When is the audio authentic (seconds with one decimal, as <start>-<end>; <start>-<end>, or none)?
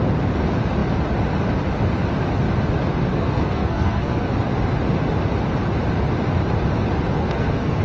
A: 0.0-3.1; 4.3-7.2